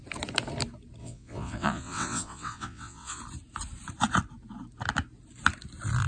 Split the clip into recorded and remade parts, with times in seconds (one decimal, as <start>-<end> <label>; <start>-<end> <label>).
0.0-1.0 recorded; 1.0-3.2 remade; 3.2-6.1 recorded